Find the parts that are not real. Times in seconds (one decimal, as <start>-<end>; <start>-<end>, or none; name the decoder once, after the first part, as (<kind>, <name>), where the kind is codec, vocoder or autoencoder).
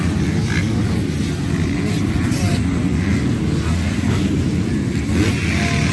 none